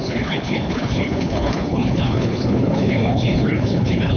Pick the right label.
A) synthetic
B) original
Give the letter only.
A